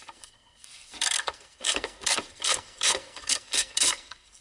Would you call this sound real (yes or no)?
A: no